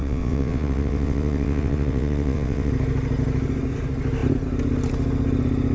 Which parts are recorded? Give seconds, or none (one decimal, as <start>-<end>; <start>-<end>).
2.7-5.7

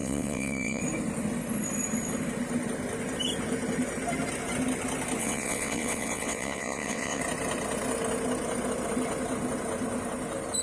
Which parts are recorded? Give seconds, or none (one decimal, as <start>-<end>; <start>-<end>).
0.8-5.2; 7.2-10.6

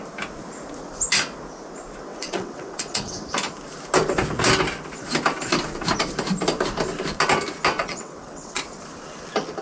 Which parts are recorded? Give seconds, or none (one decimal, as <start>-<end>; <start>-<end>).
0.0-2.1; 3.2-7.8; 8.6-9.6

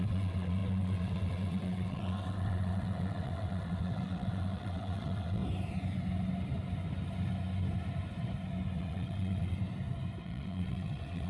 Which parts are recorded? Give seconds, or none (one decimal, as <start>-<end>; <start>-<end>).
5.4-8.8; 9.6-10.2

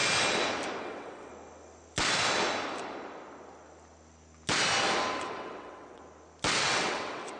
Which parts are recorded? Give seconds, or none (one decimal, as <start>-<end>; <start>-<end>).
0.0-0.8; 1.3-5.2; 6.0-6.6

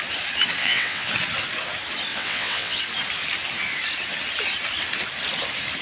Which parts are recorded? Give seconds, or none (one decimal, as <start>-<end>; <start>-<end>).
0.0-0.6; 1.1-2.1; 2.8-5.8

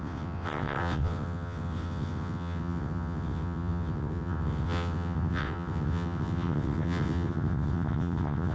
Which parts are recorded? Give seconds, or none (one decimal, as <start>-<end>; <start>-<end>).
none